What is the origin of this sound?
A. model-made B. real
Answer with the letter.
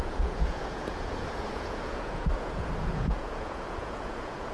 A